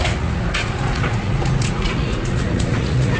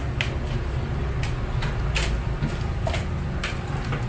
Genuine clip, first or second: second